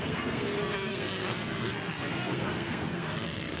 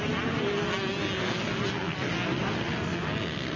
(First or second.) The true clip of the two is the second